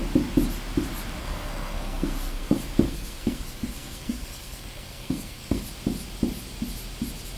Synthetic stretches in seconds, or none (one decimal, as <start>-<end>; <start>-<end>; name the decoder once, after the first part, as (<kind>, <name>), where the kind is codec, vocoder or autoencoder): 1.2-5.6 (codec, SNAC)